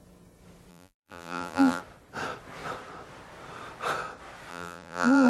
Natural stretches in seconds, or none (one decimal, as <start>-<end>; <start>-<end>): 0.0-0.7; 1.8-4.5